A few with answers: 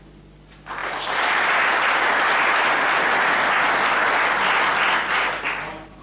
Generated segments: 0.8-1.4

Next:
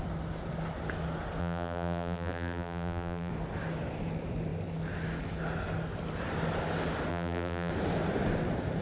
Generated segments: 1.4-3.3; 7.1-7.7

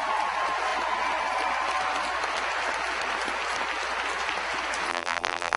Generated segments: 4.9-5.6

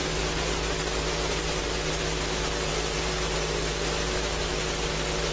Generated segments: none

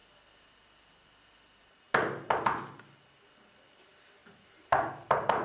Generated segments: 4.2-5.4

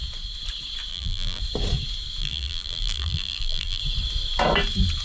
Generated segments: 0.9-1.4; 2.2-3.8